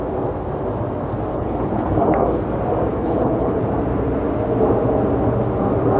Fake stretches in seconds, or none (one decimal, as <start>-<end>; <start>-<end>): 1.3-2.4; 2.9-3.6